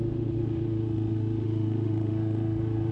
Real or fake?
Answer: fake